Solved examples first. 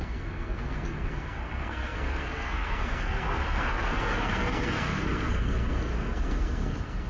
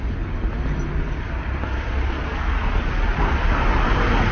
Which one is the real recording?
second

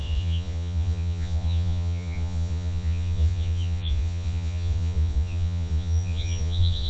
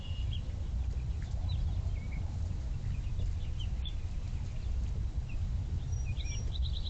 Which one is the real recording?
second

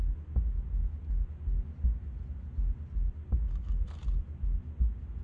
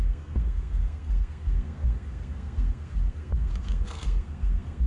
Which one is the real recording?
first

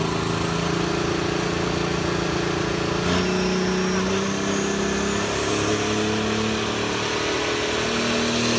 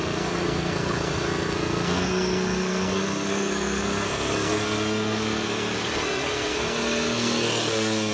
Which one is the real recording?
first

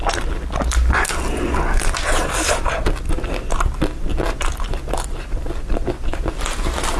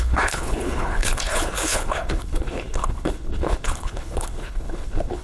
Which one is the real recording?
first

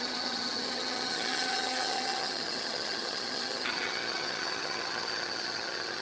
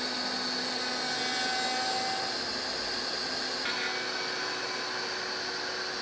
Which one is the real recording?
second